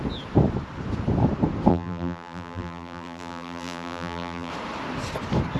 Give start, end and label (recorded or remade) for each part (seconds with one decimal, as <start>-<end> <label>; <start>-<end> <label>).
0.0-1.7 recorded; 1.7-4.5 remade; 4.5-5.6 recorded